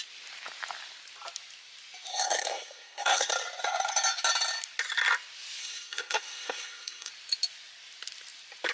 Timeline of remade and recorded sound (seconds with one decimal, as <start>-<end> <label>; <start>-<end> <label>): 0.0-2.1 recorded; 2.1-3.3 remade; 3.3-5.6 recorded; 5.6-7.1 remade; 7.1-8.7 recorded